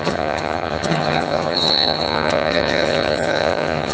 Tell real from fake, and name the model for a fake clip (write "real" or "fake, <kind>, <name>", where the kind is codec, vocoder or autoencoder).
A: fake, vocoder, HiFi-GAN